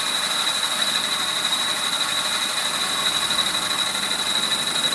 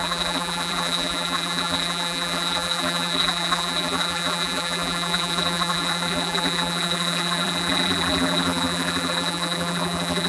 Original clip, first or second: first